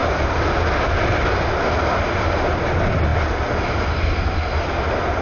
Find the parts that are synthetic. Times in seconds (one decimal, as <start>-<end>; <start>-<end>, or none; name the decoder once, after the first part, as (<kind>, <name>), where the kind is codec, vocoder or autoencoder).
none